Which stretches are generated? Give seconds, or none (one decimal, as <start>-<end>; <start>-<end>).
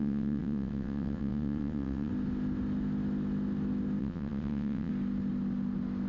0.0-2.1; 4.0-4.9